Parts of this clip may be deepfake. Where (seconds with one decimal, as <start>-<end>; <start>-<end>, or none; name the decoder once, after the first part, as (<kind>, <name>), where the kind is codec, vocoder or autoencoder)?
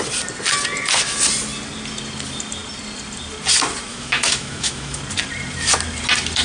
3.9-5.0 (autoencoder, DAC-VAE)